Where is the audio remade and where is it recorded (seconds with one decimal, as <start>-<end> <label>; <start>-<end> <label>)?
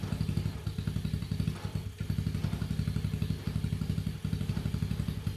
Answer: 0.0-5.4 recorded